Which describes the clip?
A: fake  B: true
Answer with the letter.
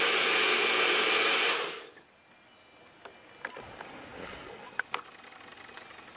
B